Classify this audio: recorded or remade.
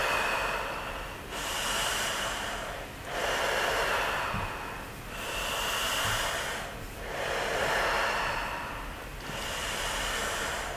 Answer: recorded